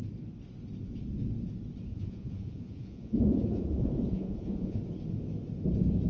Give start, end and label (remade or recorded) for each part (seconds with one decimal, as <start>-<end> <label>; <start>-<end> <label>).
0.0-1.9 recorded; 1.9-4.8 remade; 4.8-6.1 recorded